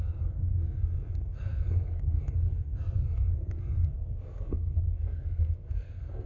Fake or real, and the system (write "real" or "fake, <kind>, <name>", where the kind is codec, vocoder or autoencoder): fake, codec, SNAC